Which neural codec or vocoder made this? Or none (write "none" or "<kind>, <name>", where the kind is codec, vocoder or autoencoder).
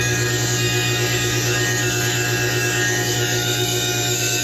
codec, DAC